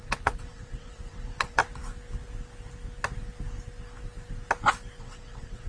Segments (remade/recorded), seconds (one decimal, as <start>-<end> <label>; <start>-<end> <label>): 0.0-1.6 remade; 1.6-5.0 recorded; 5.0-5.7 remade